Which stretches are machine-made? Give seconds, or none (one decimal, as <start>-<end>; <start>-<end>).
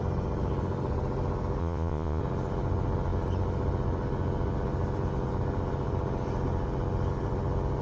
1.6-2.2